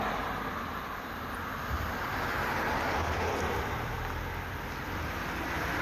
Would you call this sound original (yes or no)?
yes